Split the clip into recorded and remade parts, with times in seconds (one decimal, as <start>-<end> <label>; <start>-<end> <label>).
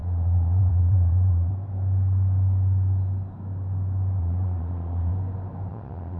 0.0-1.5 remade; 1.5-4.2 recorded; 4.2-5.1 remade; 5.1-5.7 recorded; 5.7-6.2 remade